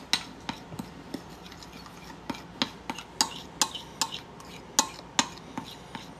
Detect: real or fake real